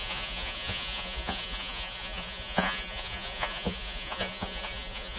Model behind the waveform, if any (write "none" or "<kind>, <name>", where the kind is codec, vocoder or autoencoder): vocoder, Vocos